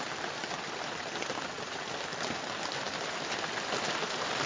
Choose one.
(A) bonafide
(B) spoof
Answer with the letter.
A